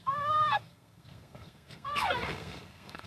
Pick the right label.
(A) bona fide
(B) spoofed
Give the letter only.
B